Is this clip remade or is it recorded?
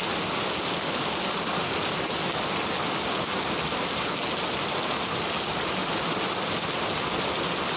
recorded